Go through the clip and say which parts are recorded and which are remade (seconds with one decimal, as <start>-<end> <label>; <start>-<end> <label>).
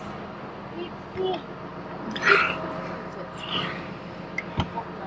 0.0-5.1 recorded